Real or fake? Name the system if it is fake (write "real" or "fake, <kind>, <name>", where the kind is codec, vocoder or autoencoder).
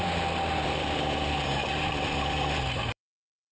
fake, vocoder, BigVGAN v2